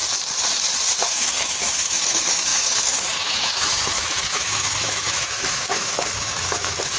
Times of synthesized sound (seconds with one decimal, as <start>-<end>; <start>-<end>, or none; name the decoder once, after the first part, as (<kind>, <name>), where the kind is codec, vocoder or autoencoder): 1.1-7.0 (autoencoder, DAC-VAE)